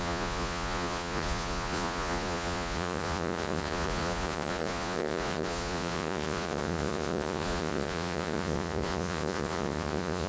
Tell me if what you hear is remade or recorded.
remade